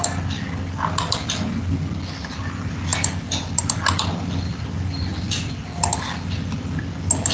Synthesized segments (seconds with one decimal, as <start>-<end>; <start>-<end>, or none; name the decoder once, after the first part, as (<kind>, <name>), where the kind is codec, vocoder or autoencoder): none